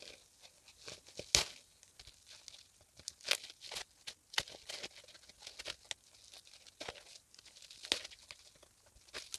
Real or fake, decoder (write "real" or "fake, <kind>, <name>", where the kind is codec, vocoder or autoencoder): real